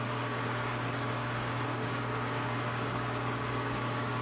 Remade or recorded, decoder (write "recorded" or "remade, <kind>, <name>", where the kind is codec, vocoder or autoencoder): remade, codec, DAC